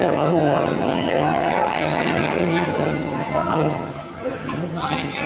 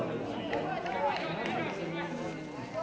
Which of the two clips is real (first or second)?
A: second